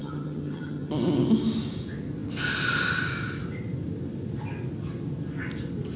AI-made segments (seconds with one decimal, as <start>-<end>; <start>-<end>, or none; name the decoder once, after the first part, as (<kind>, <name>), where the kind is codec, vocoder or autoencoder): 0.0-0.9 (vocoder, HiFi-GAN)